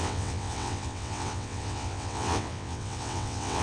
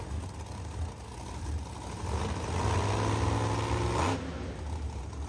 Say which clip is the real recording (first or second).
second